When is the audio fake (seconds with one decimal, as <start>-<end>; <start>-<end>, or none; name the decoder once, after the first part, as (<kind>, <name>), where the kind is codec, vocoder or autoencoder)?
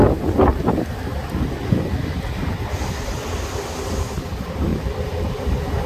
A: 4.7-5.2 (vocoder, BigVGAN v2)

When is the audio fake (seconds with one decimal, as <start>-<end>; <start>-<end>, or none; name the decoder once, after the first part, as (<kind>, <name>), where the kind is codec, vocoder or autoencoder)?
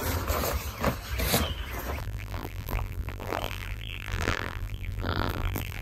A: 2.0-5.8 (vocoder, BigVGAN v2)